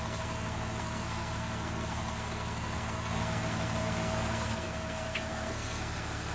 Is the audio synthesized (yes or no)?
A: yes